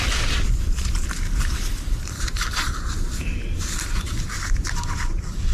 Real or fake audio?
fake